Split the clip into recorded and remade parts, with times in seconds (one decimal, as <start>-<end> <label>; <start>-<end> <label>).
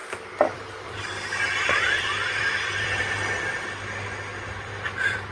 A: 0.0-3.0 remade; 3.0-4.3 recorded; 4.3-5.3 remade